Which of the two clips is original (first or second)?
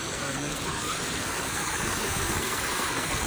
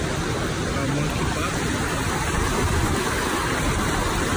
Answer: second